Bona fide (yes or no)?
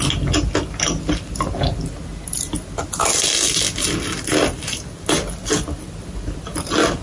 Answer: yes